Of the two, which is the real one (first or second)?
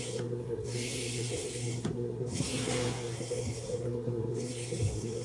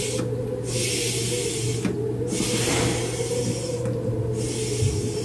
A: second